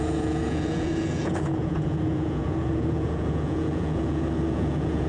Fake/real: fake